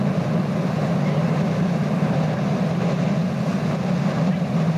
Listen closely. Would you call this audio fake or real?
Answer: real